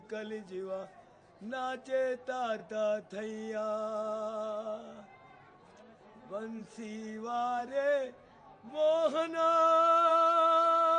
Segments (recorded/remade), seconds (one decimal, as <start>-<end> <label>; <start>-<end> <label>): 0.0-7.6 recorded; 7.6-8.7 remade; 8.7-10.1 recorded; 10.1-11.0 remade